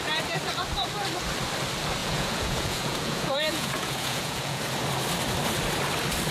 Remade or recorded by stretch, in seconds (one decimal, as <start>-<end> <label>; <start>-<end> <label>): 0.0-2.0 recorded; 2.0-4.6 remade; 4.6-6.3 recorded